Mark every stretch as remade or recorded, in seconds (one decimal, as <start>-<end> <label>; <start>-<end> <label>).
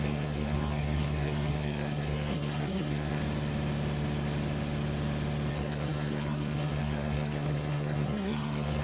0.0-3.2 remade; 3.2-5.5 recorded; 5.5-8.8 remade